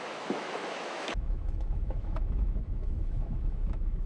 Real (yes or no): no